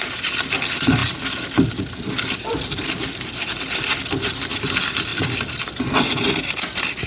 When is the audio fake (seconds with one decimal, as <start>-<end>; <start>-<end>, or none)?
none

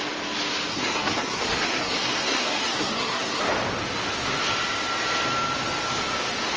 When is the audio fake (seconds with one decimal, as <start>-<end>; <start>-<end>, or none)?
0.7-3.4

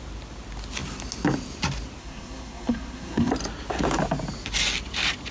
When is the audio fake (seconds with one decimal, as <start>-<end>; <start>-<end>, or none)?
2.0-3.3

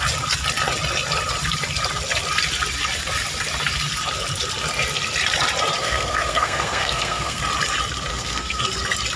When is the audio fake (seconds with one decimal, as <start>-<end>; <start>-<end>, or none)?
5.8-7.4; 8.1-8.6

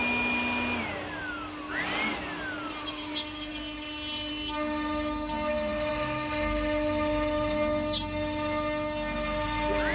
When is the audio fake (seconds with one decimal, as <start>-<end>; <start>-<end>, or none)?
none